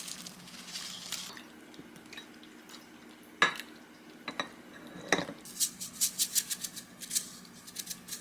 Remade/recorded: recorded